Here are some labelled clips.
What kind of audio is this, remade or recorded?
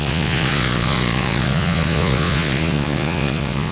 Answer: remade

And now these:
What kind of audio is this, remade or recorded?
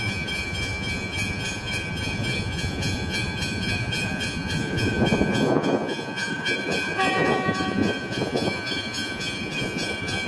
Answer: remade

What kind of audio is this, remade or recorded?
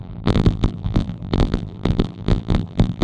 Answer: remade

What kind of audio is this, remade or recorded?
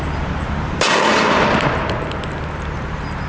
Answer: recorded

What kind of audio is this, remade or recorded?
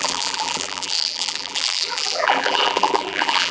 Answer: remade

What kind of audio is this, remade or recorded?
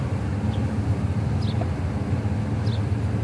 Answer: recorded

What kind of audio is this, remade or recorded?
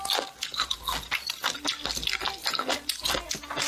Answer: recorded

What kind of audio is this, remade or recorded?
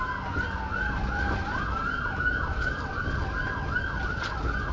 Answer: recorded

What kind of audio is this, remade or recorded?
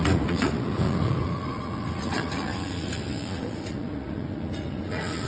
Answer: remade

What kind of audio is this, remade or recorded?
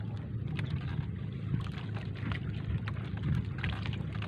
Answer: recorded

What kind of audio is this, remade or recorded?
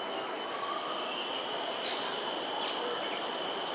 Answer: recorded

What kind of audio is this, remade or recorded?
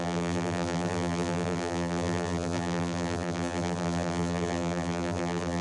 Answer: remade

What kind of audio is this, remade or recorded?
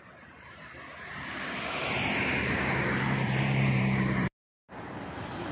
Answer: remade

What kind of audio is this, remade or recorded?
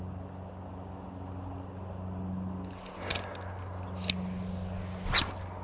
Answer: recorded